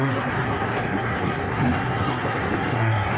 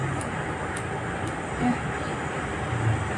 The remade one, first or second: first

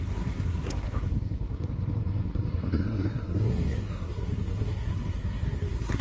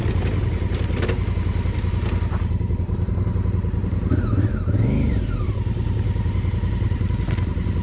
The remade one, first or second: first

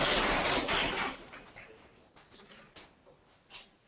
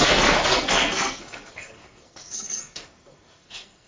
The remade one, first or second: second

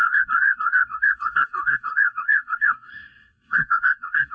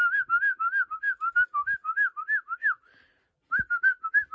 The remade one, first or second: first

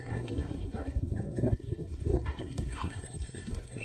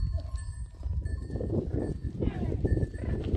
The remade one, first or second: first